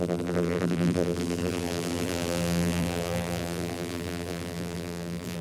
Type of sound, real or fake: fake